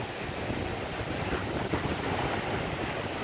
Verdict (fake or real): real